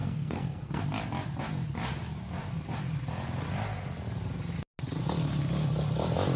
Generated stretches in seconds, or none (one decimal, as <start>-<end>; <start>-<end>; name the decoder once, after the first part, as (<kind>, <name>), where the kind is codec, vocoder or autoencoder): 0.0-0.8 (codec, SNAC)

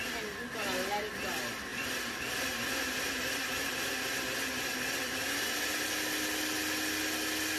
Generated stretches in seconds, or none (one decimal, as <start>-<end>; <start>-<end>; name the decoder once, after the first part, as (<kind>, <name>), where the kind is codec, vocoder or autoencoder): 1.7-3.0 (vocoder, BigVGAN v2)

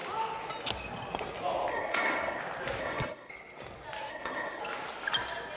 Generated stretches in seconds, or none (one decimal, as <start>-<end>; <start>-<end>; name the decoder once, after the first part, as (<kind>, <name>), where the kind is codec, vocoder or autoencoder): 1.7-2.4 (codec, SNAC); 2.8-3.3; 4.1-4.6

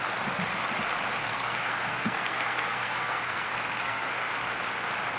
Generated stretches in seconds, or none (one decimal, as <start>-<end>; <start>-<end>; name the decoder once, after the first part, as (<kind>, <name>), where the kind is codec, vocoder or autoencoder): 1.2-4.3 (codec, SNAC)